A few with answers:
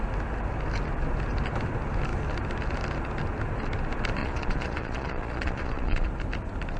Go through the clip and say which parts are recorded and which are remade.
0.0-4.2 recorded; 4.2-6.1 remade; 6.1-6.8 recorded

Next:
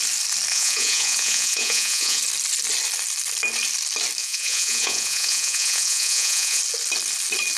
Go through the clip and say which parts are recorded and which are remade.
0.0-0.5 recorded; 0.5-2.2 remade; 2.2-4.2 recorded; 4.2-6.6 remade; 6.6-7.6 recorded